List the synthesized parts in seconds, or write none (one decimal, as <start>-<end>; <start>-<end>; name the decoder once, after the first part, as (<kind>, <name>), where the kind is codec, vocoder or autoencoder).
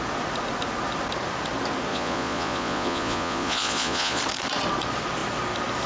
1.9-4.2 (vocoder, Vocos)